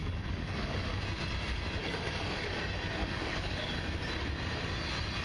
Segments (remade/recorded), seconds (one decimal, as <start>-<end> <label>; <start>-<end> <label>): 0.0-1.0 remade; 1.0-1.8 recorded; 1.8-2.6 remade; 2.6-3.0 recorded; 3.0-3.7 remade; 3.7-5.2 recorded